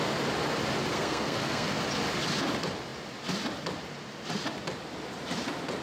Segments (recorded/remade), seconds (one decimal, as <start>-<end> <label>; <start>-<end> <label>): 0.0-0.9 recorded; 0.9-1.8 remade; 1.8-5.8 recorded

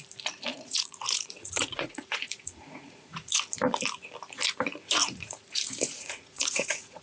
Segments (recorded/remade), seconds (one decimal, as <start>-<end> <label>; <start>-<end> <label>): 0.0-0.5 recorded; 0.5-3.4 remade; 3.4-5.0 recorded; 5.0-7.0 remade

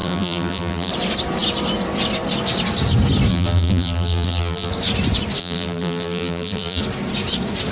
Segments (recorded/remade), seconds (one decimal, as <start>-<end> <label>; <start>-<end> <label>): 0.0-0.9 remade; 0.9-3.3 recorded; 3.3-4.7 remade; 4.7-5.4 recorded; 5.4-6.8 remade; 6.8-7.7 recorded

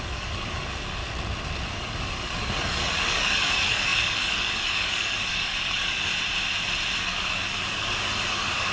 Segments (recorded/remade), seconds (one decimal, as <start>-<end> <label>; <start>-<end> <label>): 0.0-1.0 remade; 1.0-1.7 recorded; 1.7-6.1 remade; 6.1-7.0 recorded; 7.0-8.7 remade

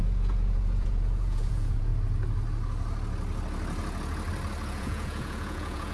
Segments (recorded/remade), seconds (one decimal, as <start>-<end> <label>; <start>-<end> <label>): 0.0-1.9 remade; 1.9-4.7 recorded; 4.7-5.9 remade